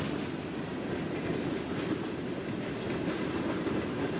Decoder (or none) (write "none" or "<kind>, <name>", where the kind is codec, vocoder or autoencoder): none